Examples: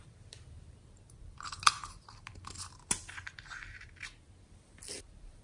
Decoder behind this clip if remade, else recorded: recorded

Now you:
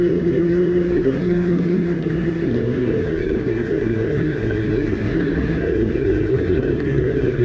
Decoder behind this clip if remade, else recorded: remade, codec, SNAC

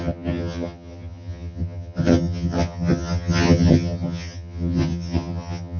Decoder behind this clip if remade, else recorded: remade, vocoder, HiFi-GAN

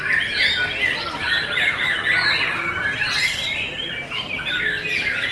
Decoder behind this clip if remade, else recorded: recorded